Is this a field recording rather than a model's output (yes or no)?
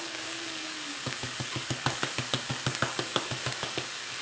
no